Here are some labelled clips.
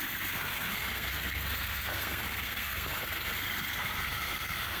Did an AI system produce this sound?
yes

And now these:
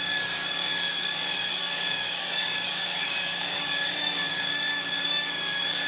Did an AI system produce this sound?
yes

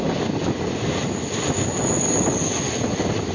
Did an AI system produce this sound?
no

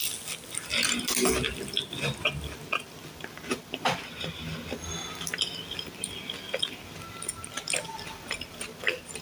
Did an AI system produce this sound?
no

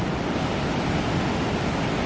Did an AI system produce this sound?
no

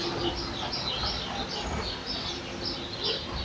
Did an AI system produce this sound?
no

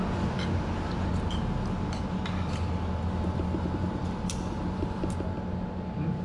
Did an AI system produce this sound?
no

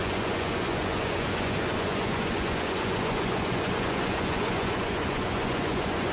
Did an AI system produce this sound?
yes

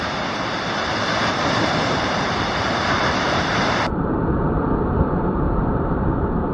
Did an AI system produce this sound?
yes